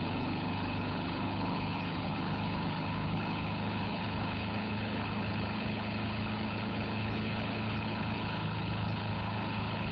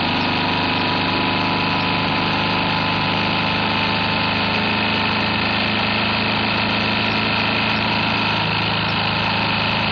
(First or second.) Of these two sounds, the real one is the second